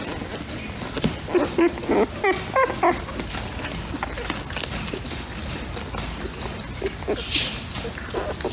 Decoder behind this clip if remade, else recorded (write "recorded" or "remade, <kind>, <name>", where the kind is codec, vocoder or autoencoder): recorded